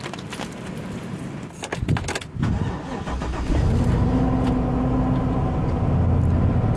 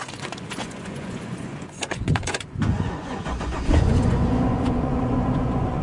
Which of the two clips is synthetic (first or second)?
second